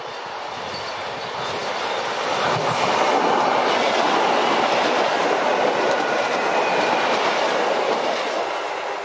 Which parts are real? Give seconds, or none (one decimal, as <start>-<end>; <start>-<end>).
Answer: 0.0-9.0